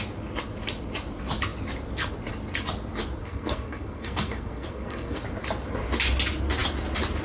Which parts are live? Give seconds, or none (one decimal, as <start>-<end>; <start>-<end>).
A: 0.0-3.2; 5.2-7.2